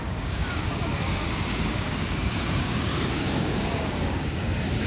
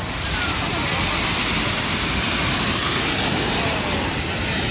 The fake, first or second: first